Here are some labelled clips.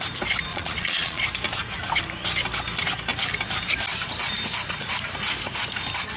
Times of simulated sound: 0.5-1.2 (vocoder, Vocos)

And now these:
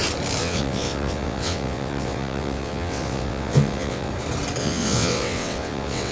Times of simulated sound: 0.4-4.1 (vocoder, WaveNeXt); 4.6-6.1